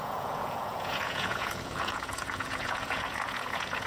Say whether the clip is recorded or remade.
remade